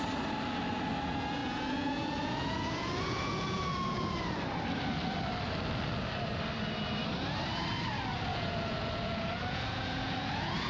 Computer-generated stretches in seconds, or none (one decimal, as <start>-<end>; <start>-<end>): 1.4-4.2; 8.3-10.7